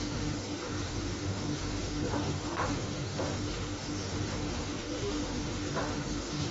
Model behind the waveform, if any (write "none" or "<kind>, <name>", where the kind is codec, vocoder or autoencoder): autoencoder, DAC-VAE